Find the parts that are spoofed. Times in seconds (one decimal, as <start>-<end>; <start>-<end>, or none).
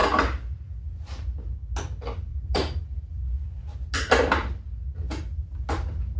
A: 2.3-2.8